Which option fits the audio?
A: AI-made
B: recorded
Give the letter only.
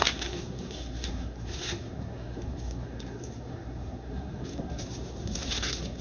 A